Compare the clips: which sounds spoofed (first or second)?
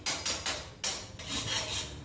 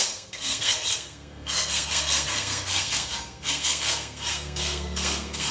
second